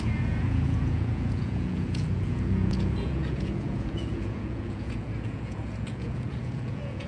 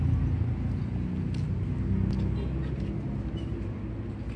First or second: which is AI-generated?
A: first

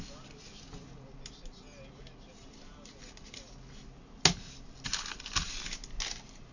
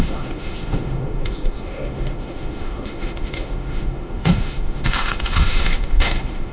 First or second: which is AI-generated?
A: second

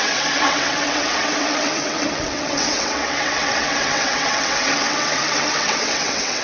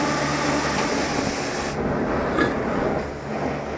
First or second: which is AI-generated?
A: first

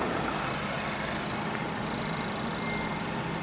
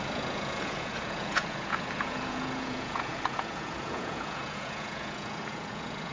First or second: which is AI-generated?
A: second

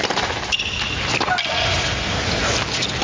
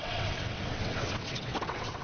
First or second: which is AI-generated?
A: second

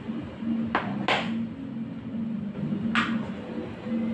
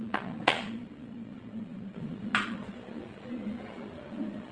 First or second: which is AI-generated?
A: second